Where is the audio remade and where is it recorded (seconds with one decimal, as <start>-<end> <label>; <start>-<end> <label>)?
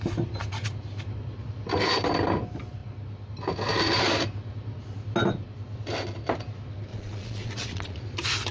0.0-6.9 recorded; 6.9-8.0 remade; 8.0-8.5 recorded